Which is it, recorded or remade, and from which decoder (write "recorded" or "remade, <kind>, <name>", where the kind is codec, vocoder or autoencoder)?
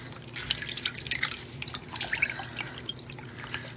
recorded